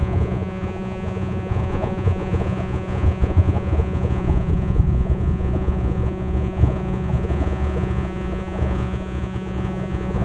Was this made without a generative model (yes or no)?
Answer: no